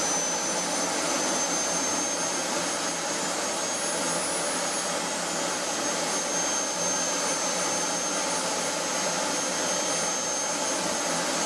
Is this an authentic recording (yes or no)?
yes